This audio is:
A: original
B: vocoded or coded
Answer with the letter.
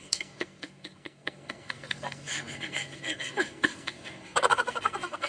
B